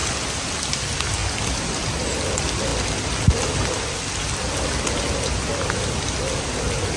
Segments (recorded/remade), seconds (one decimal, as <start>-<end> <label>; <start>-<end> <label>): 0.0-7.0 recorded